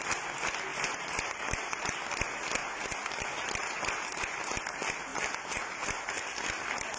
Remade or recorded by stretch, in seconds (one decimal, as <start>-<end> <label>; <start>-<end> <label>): 0.0-0.7 recorded; 0.7-1.9 remade; 1.9-2.6 recorded; 2.6-3.2 remade; 3.2-5.1 recorded; 5.1-6.1 remade; 6.1-7.0 recorded